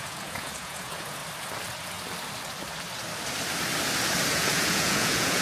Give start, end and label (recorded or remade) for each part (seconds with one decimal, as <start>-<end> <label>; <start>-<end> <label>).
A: 0.0-1.2 remade; 1.2-4.3 recorded; 4.3-5.4 remade